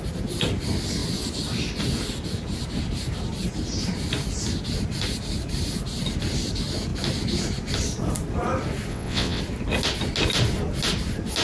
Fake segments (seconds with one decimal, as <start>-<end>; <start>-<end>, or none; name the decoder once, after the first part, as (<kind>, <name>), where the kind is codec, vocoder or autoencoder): 8.9-9.4 (vocoder, WaveNeXt)